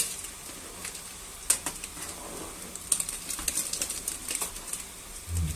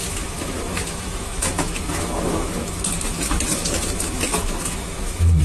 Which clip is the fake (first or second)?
second